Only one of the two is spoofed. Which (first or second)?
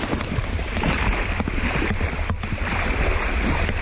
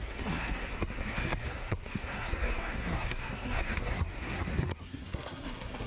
second